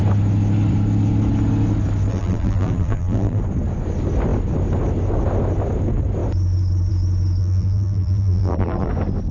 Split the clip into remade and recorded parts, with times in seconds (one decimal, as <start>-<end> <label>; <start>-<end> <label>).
0.0-2.1 recorded; 2.1-3.4 remade; 3.4-7.4 recorded; 7.4-8.9 remade; 8.9-9.3 recorded